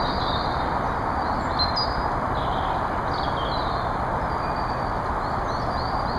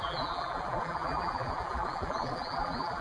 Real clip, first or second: first